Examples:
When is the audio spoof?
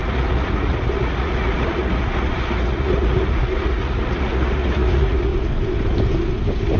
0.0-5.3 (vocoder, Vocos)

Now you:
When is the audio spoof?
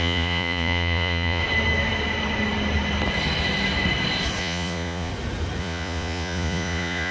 0.0-1.4 (vocoder, Vocos); 4.4-5.1; 5.6-7.1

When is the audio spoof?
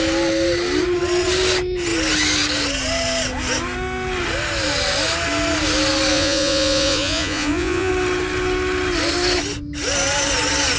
6.1-7.9 (vocoder, Vocos)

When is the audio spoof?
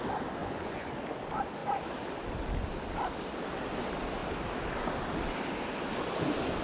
0.4-0.9 (vocoder, Vocos)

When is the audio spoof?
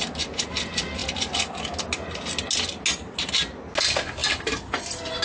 none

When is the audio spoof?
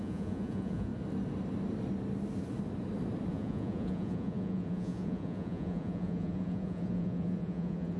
0.0-0.9 (vocoder, Vocos); 3.3-8.0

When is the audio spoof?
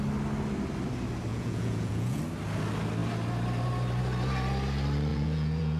1.3-2.2 (vocoder, Vocos); 5.1-5.8